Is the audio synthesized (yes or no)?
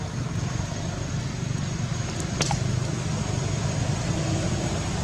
no